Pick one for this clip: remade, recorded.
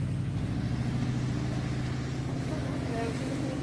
recorded